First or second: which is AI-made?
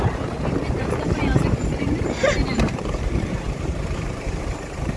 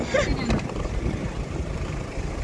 first